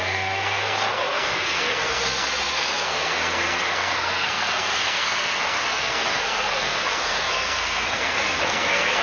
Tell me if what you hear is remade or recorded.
remade